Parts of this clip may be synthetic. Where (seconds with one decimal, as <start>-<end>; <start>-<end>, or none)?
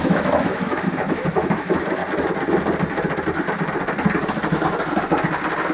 0.0-2.0